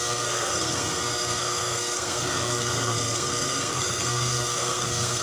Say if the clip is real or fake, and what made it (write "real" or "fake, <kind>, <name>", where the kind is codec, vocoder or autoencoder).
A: fake, codec, SNAC